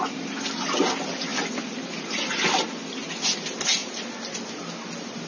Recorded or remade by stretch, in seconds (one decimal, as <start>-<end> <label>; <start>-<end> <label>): 0.0-5.3 recorded